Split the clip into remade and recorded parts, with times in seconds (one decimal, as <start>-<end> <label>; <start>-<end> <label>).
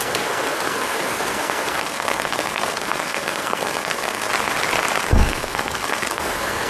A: 0.0-4.3 remade; 4.3-5.0 recorded; 5.0-6.7 remade